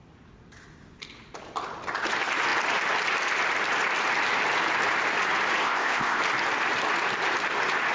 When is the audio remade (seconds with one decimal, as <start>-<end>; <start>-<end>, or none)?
5.6-6.2